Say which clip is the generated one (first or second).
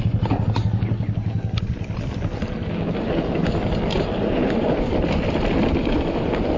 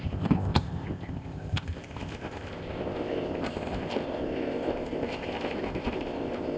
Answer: second